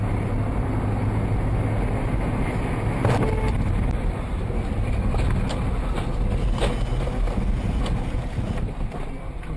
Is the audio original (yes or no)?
yes